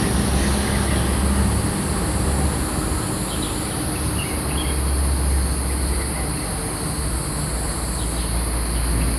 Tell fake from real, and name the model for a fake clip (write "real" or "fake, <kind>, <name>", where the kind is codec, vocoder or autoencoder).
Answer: real